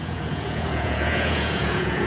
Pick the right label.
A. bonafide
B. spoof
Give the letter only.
B